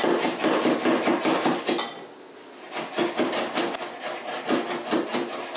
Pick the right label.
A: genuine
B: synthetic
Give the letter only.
A